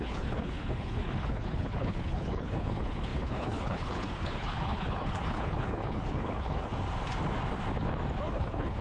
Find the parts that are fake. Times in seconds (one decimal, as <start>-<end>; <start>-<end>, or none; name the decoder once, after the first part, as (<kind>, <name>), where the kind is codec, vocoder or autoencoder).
0.0-6.7 (codec, HILCodec); 8.3-8.8